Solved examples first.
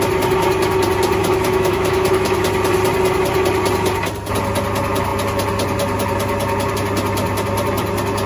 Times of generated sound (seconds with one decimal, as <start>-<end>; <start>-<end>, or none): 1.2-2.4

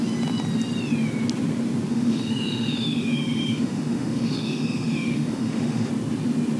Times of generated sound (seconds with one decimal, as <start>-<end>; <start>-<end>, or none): 1.9-5.9

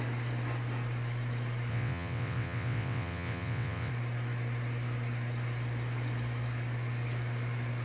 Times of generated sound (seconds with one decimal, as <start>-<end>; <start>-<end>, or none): 1.7-3.9

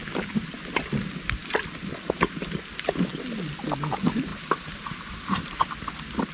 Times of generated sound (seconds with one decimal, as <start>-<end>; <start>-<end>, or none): 4.3-5.7

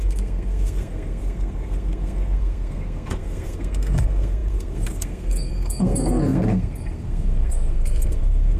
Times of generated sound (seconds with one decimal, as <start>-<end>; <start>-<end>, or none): 0.0-8.6

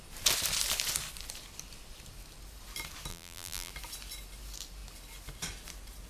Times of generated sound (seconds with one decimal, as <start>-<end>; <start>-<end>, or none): 3.1-3.7